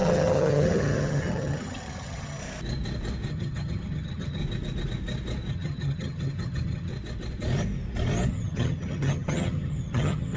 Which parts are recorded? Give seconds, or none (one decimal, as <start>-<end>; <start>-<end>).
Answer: 2.4-3.3; 4.4-5.5; 6.9-8.3